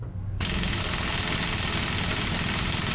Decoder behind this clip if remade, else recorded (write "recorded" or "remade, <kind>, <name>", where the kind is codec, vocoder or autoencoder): recorded